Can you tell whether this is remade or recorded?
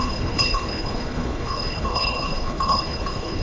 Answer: remade